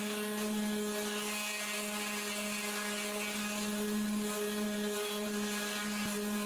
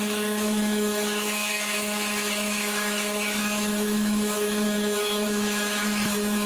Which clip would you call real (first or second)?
first